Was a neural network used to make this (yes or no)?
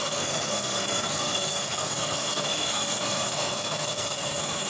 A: yes